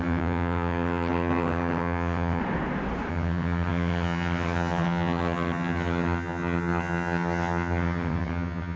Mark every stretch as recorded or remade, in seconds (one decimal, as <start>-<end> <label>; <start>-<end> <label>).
0.0-2.4 remade; 2.4-3.1 recorded; 3.1-8.8 remade